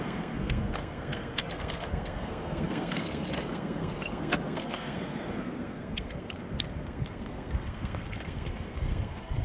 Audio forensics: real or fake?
fake